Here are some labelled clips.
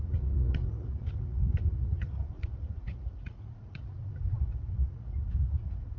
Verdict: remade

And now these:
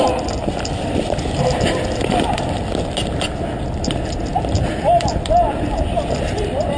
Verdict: recorded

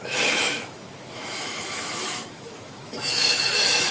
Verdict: remade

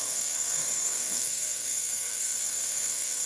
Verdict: remade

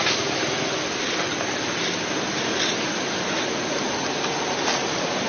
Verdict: recorded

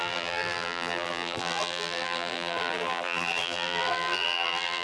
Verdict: remade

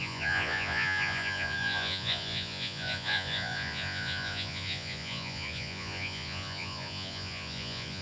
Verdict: remade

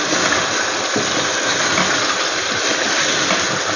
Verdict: recorded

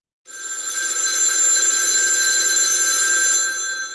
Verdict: recorded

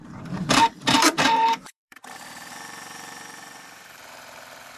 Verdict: remade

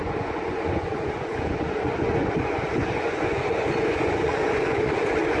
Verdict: remade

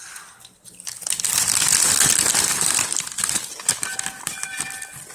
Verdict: recorded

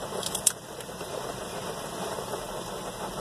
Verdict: recorded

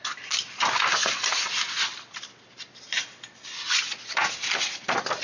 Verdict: recorded